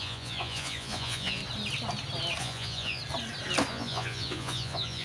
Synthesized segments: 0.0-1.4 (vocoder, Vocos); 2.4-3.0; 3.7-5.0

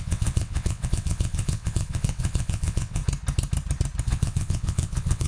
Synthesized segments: 0.0-3.0 (vocoder, WaveNeXt); 4.0-5.3

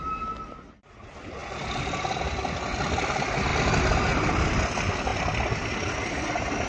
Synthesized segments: 5.1-6.7 (vocoder, BigVGAN v2)